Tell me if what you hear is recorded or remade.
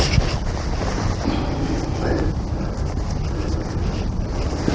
recorded